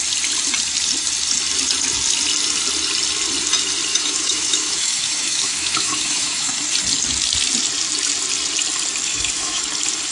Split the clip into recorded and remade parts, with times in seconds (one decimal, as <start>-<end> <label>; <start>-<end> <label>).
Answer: 0.0-3.9 recorded; 3.9-6.5 remade; 6.5-9.1 recorded; 9.1-9.6 remade; 9.6-10.1 recorded